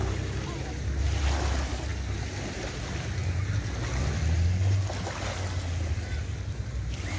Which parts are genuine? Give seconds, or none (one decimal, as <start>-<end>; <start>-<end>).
0.0-7.2